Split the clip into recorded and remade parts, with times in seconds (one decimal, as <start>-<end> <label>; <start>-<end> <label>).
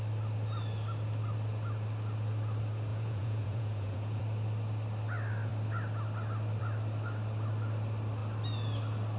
0.0-2.9 recorded; 2.9-4.2 remade; 4.2-9.2 recorded